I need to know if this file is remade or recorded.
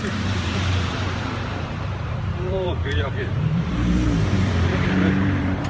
remade